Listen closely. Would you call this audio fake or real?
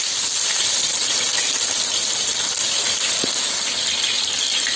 real